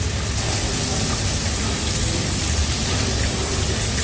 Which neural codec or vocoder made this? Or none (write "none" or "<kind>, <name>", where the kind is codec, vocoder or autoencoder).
none